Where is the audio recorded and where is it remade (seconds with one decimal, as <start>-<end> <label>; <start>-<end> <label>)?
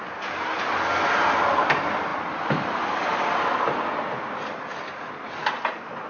0.0-0.9 recorded; 0.9-1.4 remade; 1.4-2.1 recorded; 2.1-5.1 remade; 5.1-6.1 recorded